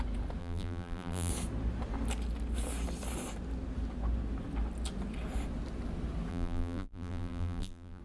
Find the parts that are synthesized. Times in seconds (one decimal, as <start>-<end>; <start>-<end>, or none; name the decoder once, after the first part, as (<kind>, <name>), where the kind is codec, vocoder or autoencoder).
0.4-1.3 (vocoder, BigVGAN v2); 6.3-8.0